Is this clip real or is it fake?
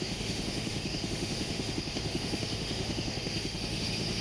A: fake